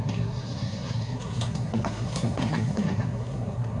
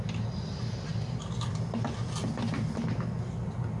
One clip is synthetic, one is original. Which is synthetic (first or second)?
first